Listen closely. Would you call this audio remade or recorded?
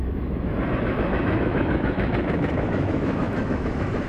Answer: remade